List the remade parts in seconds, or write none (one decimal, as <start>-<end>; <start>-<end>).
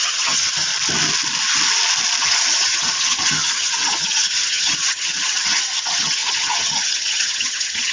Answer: 0.0-0.7; 2.2-7.9